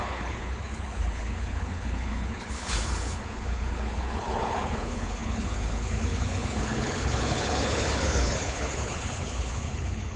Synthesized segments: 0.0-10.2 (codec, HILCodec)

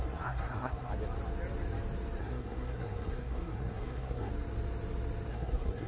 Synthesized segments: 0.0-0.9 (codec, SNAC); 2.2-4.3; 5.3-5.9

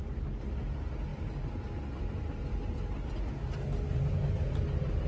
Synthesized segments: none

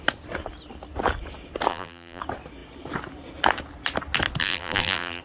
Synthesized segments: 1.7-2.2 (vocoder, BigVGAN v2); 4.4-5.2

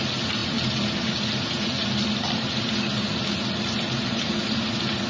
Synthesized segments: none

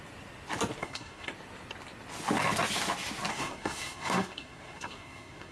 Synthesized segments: 0.8-1.3 (codec, SNAC); 3.3-5.5

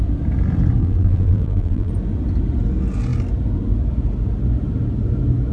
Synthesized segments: 0.8-1.9 (vocoder, BigVGAN v2)